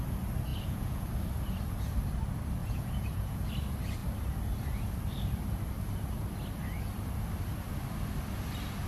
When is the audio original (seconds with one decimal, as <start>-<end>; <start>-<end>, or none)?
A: 0.0-0.5; 1.1-2.6; 3.5-8.9